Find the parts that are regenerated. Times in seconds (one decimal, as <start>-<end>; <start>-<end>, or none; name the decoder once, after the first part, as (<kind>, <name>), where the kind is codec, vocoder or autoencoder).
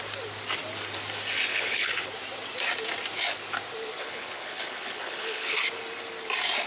1.5-2.1 (codec, HILCodec); 4.0-5.6